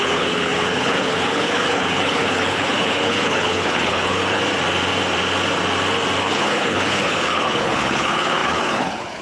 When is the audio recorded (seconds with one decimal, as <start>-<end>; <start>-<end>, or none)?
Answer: 4.4-6.2